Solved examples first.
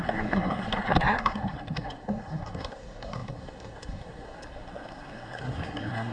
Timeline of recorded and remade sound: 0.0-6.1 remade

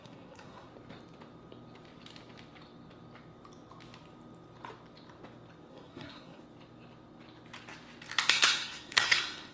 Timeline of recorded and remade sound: 0.0-0.7 remade; 0.7-5.7 recorded; 5.7-6.4 remade; 6.4-8.3 recorded; 8.3-9.5 remade

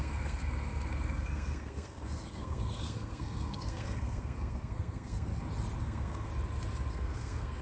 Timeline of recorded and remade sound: 0.0-5.3 remade; 5.3-5.8 recorded; 5.8-6.3 remade; 6.3-6.9 recorded; 6.9-7.6 remade